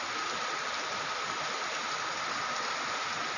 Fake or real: real